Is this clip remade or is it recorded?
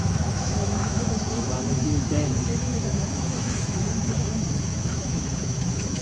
remade